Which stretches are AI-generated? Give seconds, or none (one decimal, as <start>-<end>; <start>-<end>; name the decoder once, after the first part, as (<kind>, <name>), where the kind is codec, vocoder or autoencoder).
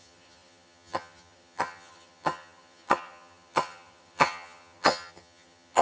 0.0-5.8 (vocoder, HiFi-GAN)